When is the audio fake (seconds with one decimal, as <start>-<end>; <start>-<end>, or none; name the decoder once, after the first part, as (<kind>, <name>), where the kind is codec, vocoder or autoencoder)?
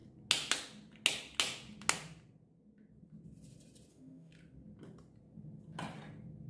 3.9-4.3 (autoencoder, DAC-VAE)